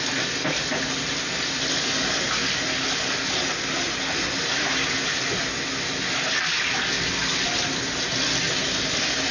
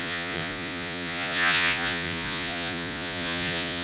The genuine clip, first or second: first